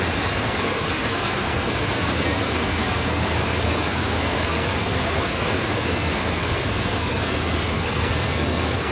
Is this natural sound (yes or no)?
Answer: no